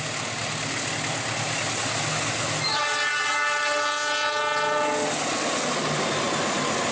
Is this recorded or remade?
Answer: recorded